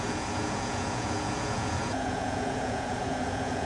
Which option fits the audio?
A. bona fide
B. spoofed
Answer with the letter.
B